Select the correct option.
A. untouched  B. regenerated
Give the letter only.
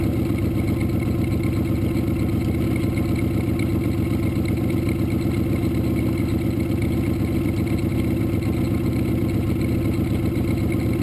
A